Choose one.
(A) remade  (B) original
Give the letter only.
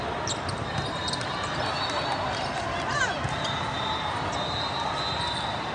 B